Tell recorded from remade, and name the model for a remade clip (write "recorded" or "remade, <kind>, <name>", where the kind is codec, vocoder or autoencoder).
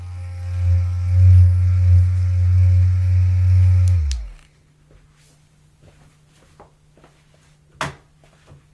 recorded